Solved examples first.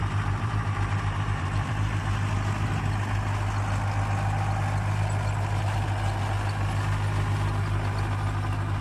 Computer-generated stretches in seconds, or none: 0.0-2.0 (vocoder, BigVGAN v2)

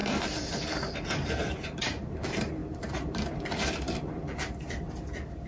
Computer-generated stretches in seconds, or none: 0.0-5.5 (vocoder, BigVGAN v2)

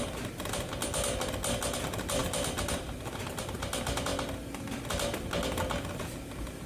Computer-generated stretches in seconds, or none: none

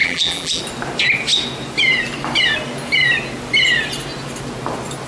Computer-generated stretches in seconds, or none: 0.0-0.6 (vocoder, BigVGAN v2)

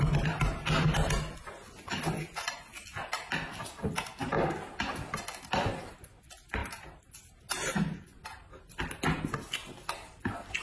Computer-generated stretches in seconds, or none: 6.6-7.1 (vocoder, BigVGAN v2)